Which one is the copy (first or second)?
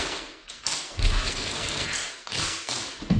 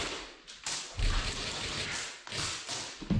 first